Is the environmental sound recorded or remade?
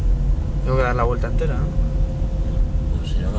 recorded